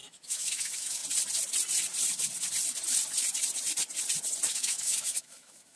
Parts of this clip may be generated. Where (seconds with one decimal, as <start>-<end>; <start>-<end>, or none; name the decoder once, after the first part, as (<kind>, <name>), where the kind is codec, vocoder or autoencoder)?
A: 0.0-1.0 (autoencoder, DAC-VAE); 4.5-5.8